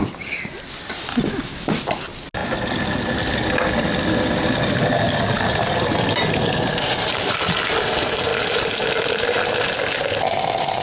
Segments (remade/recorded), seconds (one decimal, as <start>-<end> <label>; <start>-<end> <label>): 0.0-10.8 recorded